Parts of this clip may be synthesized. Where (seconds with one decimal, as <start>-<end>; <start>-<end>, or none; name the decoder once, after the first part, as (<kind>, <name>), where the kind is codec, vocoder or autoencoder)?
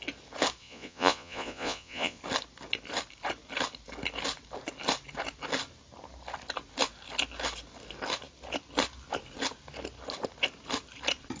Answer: 0.6-2.2 (vocoder, Vocos)